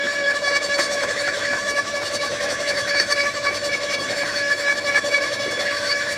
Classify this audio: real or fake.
fake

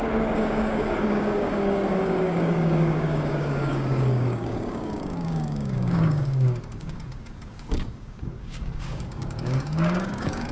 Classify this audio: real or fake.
fake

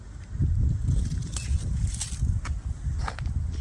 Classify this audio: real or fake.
real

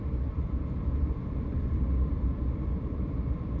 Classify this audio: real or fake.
fake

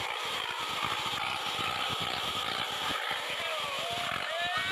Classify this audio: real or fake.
real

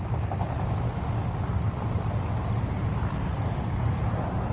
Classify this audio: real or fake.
real